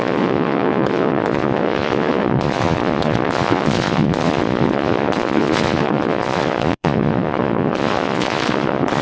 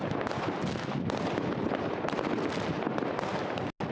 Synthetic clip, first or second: first